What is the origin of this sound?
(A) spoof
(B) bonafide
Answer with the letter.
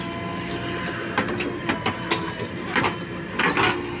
B